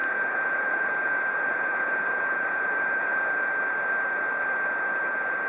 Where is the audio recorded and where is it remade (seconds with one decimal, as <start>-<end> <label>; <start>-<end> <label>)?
0.0-3.3 remade; 3.3-5.5 recorded